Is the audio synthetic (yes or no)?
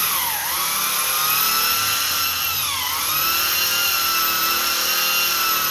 no